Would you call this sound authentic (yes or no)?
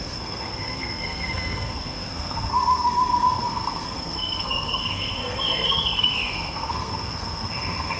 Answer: no